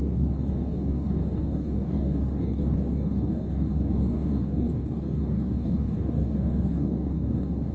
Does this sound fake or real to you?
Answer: fake